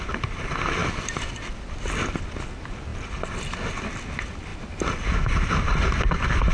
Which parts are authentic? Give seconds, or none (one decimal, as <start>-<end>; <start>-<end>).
0.0-4.5; 6.0-6.5